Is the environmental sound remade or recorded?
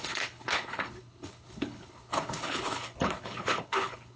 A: remade